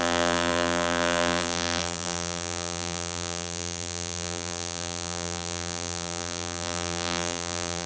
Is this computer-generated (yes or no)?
yes